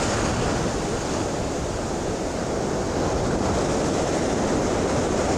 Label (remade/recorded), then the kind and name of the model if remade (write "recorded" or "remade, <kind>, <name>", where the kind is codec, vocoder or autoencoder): recorded